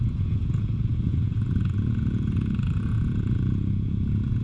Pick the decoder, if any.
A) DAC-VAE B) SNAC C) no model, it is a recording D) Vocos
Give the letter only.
D